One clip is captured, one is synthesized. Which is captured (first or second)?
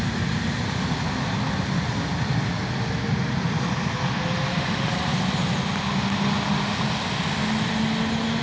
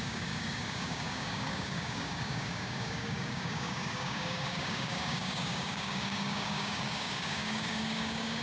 first